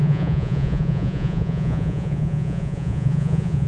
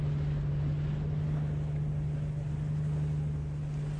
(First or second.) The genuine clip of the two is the second